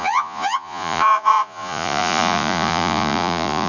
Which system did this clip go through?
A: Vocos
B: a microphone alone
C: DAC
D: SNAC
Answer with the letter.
A